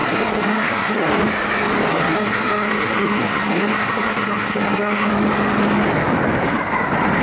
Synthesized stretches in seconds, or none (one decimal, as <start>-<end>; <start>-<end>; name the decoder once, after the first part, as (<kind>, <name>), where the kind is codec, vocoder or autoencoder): 0.0-1.1 (codec, SNAC); 1.9-5.1